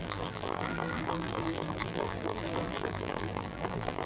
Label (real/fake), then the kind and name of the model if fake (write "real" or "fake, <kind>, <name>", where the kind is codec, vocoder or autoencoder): fake, vocoder, BigVGAN v2